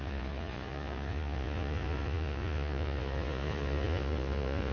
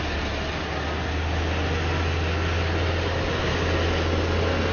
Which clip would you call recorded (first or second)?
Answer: second